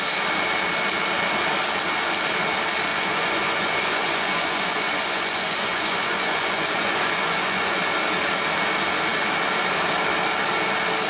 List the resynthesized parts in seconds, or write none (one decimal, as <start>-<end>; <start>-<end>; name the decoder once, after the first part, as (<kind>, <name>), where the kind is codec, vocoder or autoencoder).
2.9-7.8 (vocoder, Vocos)